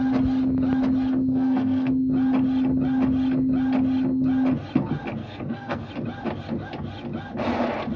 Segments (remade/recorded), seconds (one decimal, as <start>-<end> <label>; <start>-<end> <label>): 0.0-1.3 recorded; 1.3-1.9 remade; 1.9-5.2 recorded; 5.2-5.9 remade; 5.9-8.0 recorded